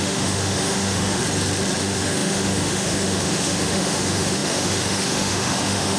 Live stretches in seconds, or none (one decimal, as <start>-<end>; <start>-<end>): 1.2-1.8